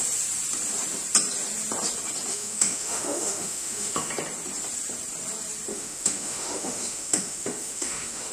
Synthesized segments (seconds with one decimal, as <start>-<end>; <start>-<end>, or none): 2.3-4.1; 5.7-8.3